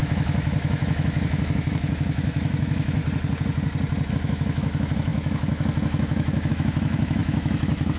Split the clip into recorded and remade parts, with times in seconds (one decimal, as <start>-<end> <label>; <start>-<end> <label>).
0.0-3.0 remade; 3.0-4.1 recorded; 4.1-8.0 remade